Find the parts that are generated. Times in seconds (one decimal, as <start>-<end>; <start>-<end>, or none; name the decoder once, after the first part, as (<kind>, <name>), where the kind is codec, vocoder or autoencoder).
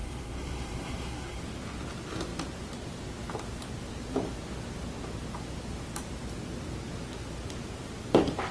0.0-1.4 (codec, SNAC)